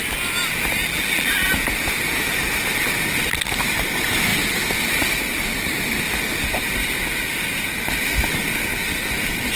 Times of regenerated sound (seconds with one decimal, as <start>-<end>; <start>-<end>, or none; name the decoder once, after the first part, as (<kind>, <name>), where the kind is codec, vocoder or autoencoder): 0.8-1.5 (vocoder, BigVGAN v2)